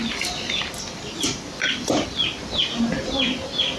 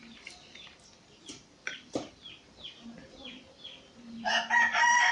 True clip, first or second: first